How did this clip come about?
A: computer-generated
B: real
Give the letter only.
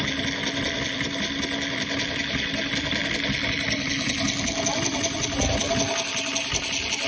B